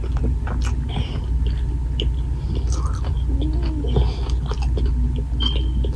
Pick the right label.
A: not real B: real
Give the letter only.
B